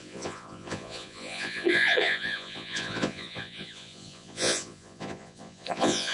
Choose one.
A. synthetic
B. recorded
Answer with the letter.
A